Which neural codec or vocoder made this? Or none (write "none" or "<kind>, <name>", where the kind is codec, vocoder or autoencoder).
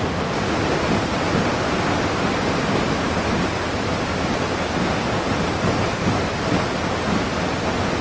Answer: none